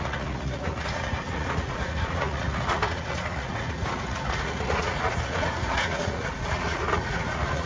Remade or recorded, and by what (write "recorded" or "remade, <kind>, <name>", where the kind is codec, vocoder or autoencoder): remade, vocoder, Vocos